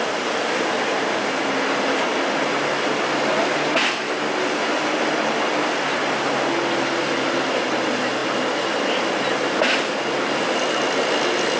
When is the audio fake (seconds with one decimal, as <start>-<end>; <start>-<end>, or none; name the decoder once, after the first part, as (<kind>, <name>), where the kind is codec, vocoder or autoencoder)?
none